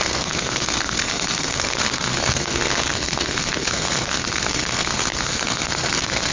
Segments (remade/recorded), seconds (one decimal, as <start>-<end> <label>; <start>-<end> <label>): 0.0-6.3 remade